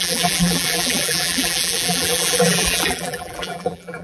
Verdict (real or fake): fake